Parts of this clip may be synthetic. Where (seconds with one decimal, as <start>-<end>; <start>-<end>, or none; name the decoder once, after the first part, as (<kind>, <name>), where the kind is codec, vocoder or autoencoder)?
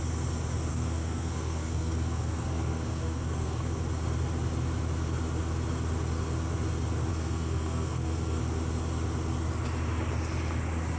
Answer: 0.7-3.8 (codec, SNAC); 7.1-8.4